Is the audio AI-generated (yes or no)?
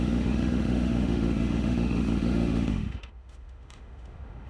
yes